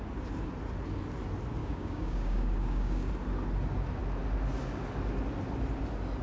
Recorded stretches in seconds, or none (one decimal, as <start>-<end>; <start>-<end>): 0.0-1.6; 3.1-6.2